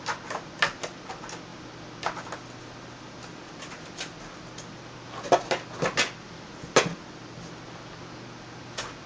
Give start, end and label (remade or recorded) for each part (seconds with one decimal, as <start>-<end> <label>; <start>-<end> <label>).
0.0-9.1 recorded